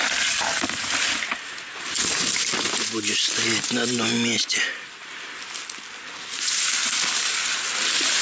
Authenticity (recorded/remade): recorded